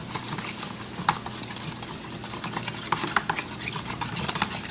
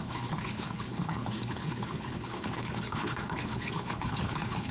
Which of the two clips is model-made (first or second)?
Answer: second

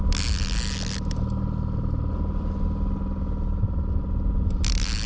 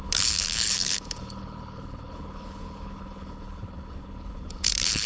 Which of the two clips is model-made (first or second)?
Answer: second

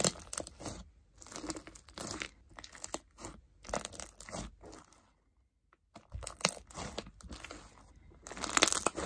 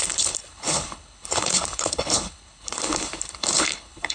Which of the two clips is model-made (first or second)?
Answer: second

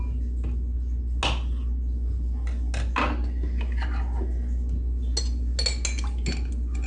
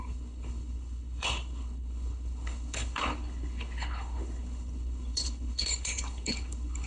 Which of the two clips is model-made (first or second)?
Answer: second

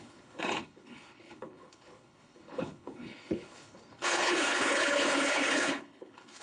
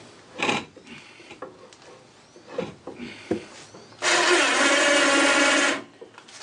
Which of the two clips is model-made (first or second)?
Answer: first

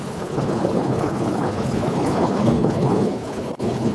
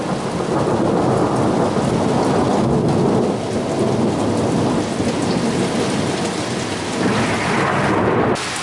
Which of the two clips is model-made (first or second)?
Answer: first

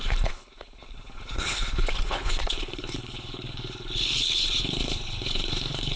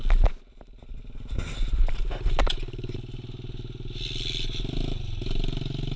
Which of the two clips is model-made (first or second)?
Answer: first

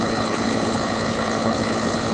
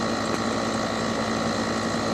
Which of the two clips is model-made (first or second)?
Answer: first